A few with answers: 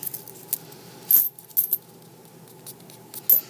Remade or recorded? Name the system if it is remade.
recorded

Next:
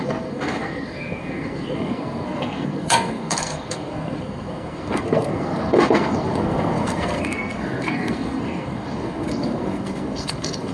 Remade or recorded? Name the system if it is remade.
remade, codec, SNAC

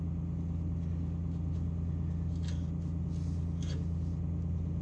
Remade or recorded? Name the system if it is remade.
recorded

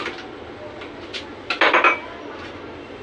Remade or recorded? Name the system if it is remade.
recorded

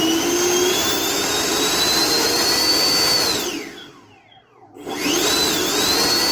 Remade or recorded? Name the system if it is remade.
recorded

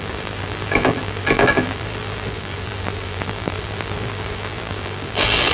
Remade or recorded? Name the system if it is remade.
remade, vocoder, BigVGAN v2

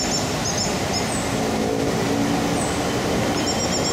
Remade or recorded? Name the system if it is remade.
recorded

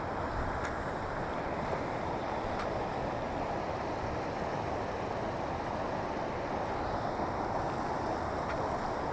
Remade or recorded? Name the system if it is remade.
recorded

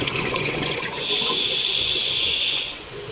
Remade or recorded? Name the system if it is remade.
remade, vocoder, Vocos